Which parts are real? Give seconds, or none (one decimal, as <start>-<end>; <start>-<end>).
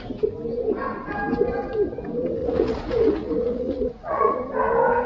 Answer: 0.0-2.4; 4.3-5.1